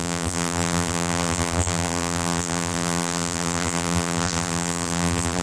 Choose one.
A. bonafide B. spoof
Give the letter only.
B